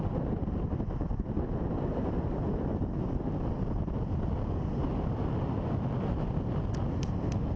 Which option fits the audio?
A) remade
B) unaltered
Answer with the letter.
B